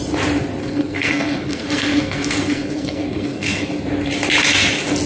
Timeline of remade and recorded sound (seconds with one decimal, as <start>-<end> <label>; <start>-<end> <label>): 0.0-0.6 recorded; 0.6-3.7 remade; 3.7-5.1 recorded